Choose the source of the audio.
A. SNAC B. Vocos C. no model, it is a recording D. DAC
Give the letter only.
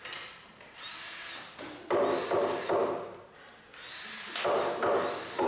C